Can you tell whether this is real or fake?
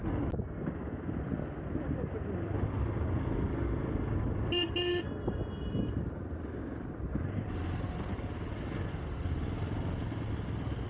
real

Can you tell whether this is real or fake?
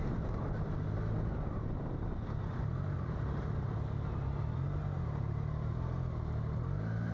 real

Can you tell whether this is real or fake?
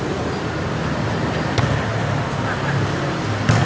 real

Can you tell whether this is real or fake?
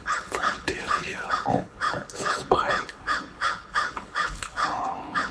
fake